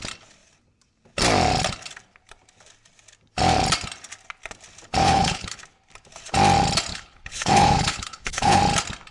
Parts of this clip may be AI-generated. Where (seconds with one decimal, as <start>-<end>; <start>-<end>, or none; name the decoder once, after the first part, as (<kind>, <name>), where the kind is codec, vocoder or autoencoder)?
5.0-5.6 (codec, HILCodec); 6.9-8.6

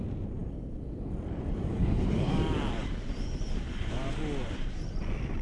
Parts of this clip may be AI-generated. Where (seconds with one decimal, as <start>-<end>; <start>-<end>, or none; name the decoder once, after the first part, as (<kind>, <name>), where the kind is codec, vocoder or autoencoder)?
1.7-2.3 (codec, HILCodec)

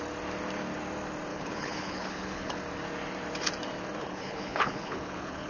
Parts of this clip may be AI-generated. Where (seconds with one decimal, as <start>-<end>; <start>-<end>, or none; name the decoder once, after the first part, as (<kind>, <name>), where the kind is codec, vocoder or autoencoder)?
1.3-2.6 (codec, HILCodec); 4.0-5.5

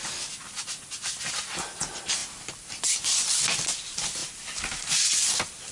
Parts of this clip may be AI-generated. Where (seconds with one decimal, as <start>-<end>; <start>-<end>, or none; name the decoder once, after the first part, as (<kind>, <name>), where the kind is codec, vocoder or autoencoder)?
none

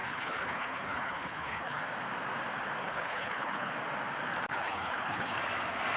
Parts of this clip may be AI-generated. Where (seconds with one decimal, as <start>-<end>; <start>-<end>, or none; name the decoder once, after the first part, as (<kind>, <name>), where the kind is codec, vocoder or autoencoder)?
0.0-1.8 (codec, HILCodec); 2.8-3.7; 4.5-5.4

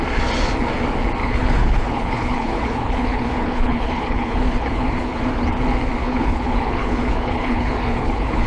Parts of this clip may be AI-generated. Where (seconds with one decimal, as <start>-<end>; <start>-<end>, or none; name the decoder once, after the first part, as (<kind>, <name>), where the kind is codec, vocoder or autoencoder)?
1.2-5.2 (codec, HILCodec); 6.0-8.5

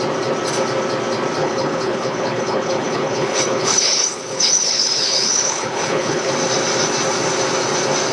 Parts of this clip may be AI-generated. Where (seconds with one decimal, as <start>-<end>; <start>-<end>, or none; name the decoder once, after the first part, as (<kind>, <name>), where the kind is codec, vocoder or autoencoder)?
1.4-6.3 (codec, HILCodec)

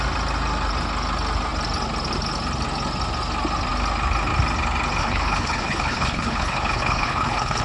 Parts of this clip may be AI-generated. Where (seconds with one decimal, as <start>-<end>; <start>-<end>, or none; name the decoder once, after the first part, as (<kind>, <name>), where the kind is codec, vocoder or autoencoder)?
5.0-7.6 (codec, HILCodec)